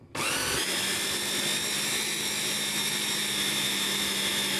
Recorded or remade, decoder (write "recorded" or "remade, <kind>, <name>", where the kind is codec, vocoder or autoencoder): recorded